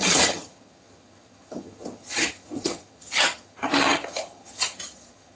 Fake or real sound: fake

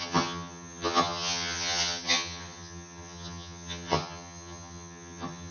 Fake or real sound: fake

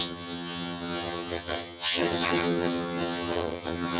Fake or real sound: fake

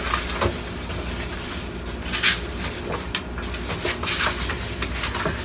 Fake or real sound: real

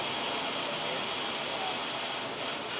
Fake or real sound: real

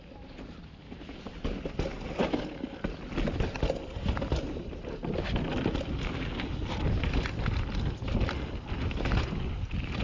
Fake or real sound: real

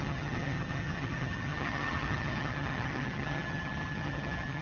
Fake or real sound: fake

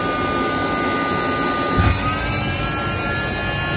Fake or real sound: real